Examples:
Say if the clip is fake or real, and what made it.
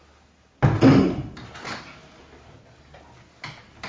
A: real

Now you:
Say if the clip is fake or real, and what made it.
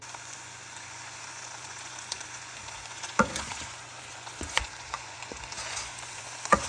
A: fake, vocoder, Vocos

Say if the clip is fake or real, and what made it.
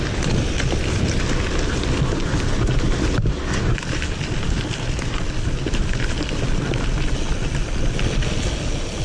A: real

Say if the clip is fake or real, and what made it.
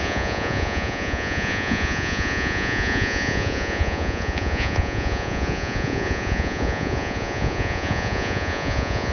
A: fake, vocoder, Vocos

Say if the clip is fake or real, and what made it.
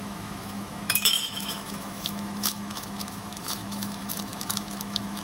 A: fake, autoencoder, DAC-VAE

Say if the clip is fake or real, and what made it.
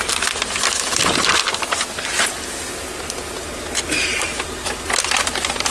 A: real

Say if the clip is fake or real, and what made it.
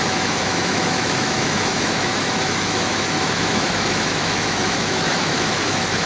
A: fake, autoencoder, DAC-VAE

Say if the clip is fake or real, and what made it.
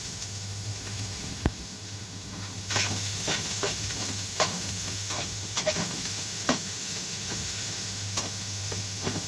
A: fake, autoencoder, DAC-VAE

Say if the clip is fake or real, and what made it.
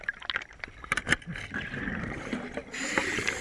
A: real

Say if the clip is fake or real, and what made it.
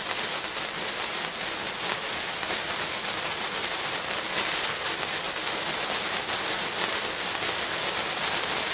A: real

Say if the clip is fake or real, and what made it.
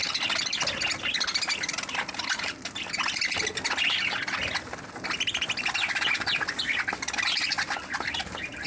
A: real